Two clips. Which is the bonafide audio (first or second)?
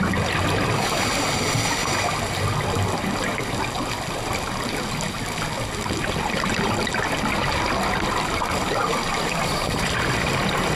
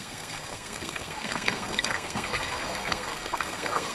first